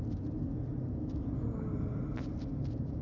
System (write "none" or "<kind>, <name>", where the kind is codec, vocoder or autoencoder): none